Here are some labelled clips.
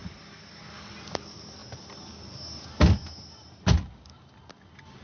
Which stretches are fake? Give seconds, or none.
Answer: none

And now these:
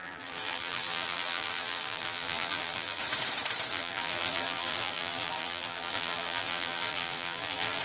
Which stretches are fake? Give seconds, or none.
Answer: 0.0-3.0 (vocoder, BigVGAN v2); 3.7-7.8

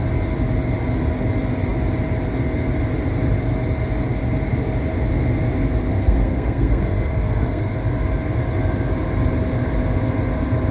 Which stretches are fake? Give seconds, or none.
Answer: 5.9-7.7 (codec, SNAC)

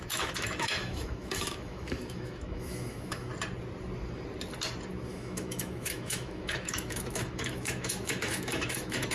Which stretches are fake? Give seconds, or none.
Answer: 0.0-3.3 (autoencoder, DAC-VAE); 5.1-9.1

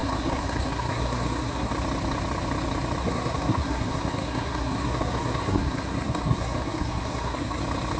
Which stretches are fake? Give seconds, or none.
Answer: 0.0-1.7 (codec, SNAC); 3.0-7.6

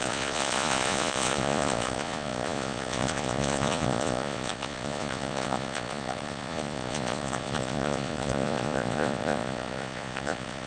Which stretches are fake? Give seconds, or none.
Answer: 0.0-10.7 (vocoder, Vocos)

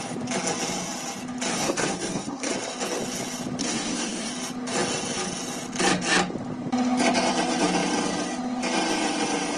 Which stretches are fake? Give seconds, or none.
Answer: 1.5-2.5 (codec, SNAC); 3.6-4.3

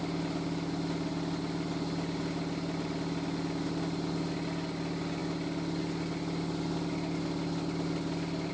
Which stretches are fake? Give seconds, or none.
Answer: none